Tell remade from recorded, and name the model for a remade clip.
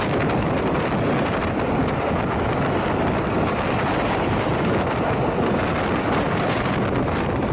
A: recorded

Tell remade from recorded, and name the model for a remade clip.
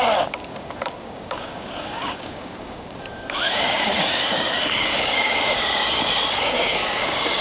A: remade, codec, DAC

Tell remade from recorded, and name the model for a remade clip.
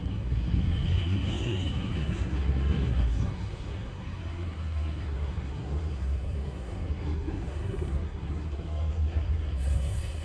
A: remade, codec, SNAC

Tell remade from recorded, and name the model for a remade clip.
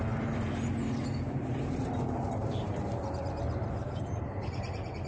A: remade, vocoder, BigVGAN v2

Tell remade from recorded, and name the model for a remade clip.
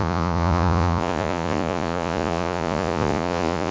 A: remade, vocoder, Vocos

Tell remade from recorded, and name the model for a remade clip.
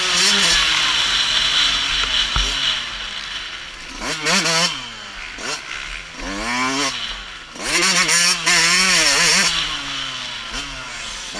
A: recorded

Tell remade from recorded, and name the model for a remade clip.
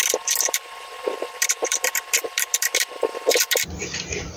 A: remade, vocoder, BigVGAN v2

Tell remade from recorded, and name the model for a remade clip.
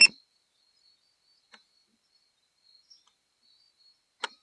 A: recorded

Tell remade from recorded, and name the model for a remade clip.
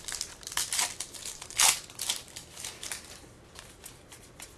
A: recorded